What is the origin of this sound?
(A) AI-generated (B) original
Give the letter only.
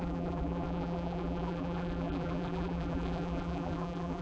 A